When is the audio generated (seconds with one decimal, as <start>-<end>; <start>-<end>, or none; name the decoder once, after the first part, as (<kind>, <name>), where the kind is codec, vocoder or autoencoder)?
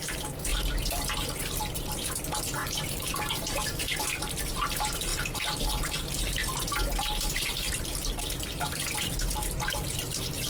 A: 0.0-0.5 (vocoder, BigVGAN v2); 1.6-6.4; 7.3-10.5